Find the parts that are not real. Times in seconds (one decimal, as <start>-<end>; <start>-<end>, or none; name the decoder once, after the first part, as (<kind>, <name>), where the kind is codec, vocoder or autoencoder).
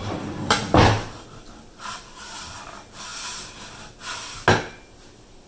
none